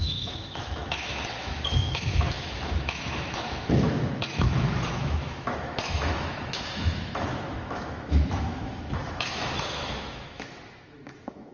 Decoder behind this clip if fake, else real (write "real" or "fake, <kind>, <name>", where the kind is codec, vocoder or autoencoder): fake, autoencoder, DAC-VAE